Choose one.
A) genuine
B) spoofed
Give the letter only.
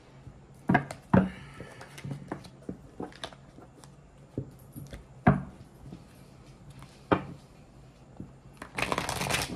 A